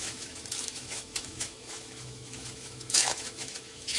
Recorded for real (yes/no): no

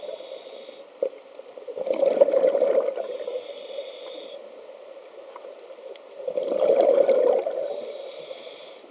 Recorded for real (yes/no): yes